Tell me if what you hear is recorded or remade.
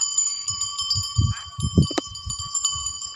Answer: remade